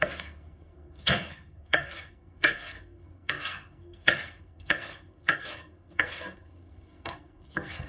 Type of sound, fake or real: fake